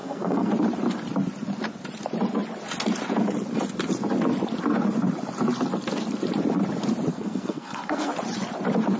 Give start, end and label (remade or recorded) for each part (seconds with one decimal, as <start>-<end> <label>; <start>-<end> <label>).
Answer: 0.0-0.5 remade; 0.5-7.1 recorded; 7.1-8.1 remade; 8.1-9.0 recorded